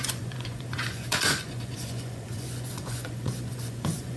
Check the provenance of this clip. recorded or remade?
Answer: remade